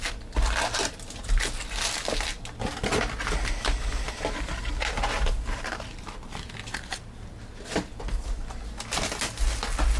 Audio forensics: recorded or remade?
recorded